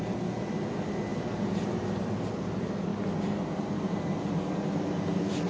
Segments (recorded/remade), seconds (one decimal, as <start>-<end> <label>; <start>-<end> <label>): 0.0-5.5 recorded